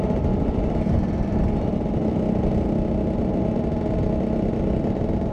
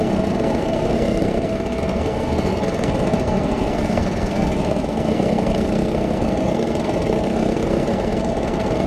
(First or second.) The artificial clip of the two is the second